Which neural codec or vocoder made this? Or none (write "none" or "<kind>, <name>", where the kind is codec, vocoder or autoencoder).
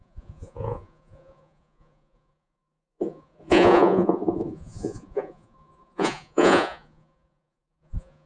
vocoder, Vocos